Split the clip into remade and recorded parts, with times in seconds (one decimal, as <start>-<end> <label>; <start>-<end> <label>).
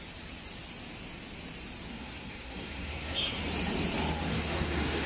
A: 0.0-1.9 recorded; 1.9-3.4 remade; 3.4-4.3 recorded; 4.3-5.1 remade